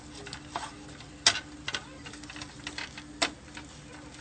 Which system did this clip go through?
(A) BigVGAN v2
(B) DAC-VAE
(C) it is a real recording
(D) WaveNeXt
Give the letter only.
C